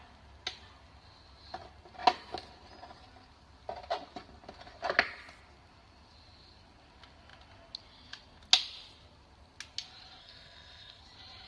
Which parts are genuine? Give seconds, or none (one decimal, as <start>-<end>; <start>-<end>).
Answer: 0.0-10.2; 11.0-11.5